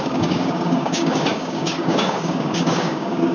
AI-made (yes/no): yes